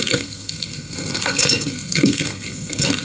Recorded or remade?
remade